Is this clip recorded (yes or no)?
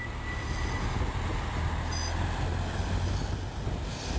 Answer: yes